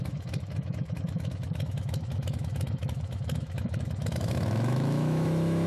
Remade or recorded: remade